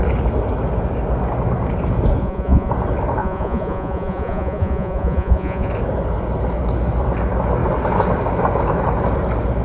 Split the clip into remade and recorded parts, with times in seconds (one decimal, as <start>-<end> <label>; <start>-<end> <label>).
0.0-2.2 recorded; 2.2-2.7 remade; 2.7-3.2 recorded; 3.2-5.7 remade; 5.7-9.6 recorded